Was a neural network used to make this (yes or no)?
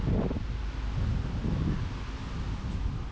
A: no